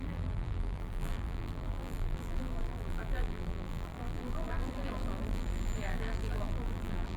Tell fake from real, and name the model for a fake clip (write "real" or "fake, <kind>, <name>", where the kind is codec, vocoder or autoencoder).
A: fake, vocoder, BigVGAN v2